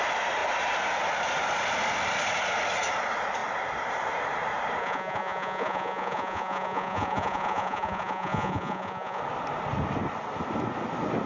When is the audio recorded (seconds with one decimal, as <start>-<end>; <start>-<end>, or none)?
0.0-4.8; 9.2-11.3